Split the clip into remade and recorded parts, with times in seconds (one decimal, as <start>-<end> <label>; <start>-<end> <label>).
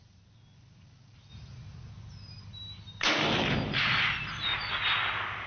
0.0-1.3 recorded; 1.3-1.9 remade; 1.9-5.5 recorded